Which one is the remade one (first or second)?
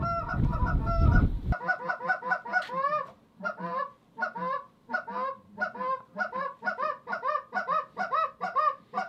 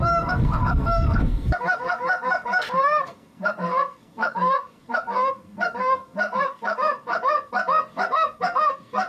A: second